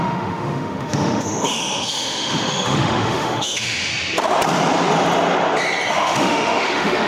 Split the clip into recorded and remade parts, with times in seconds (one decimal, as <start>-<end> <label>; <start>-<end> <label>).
0.0-3.9 remade; 3.9-5.9 recorded; 5.9-7.1 remade